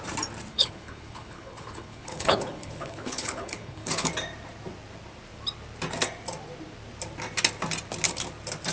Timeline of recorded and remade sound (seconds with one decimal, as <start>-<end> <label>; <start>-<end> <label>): 0.0-0.5 recorded; 0.5-4.1 remade; 4.1-8.7 recorded